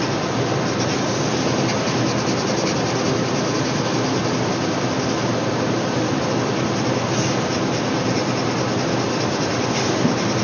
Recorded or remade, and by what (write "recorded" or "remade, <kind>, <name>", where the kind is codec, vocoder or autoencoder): recorded